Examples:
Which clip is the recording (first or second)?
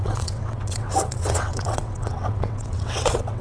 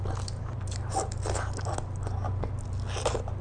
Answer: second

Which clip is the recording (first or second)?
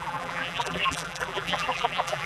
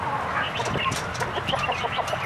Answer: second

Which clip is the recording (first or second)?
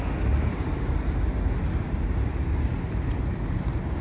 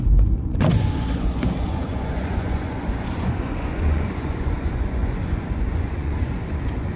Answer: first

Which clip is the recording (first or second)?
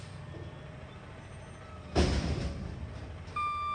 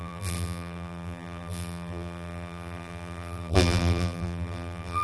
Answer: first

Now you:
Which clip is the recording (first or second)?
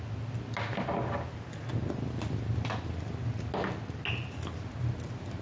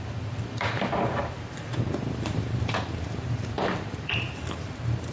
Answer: first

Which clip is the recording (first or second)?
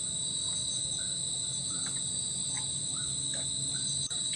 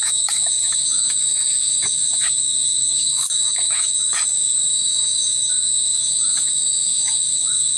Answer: first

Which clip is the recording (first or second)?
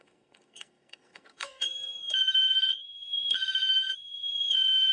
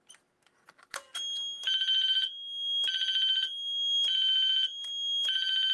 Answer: second